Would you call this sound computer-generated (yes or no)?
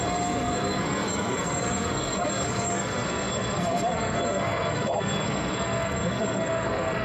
yes